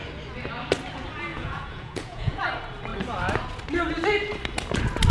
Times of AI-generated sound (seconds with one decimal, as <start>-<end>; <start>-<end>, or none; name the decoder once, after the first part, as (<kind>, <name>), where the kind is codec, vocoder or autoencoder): 1.3-2.4 (vocoder, Vocos)